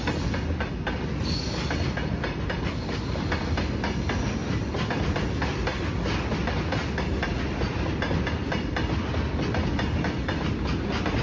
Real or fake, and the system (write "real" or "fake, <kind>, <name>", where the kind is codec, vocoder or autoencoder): real